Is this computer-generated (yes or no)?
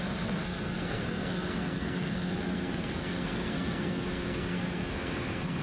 yes